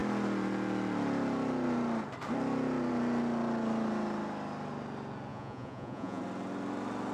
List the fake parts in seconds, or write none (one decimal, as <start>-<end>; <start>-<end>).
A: 5.3-6.2